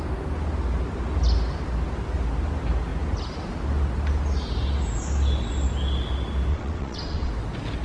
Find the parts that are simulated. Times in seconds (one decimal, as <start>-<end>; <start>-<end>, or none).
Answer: 6.5-7.3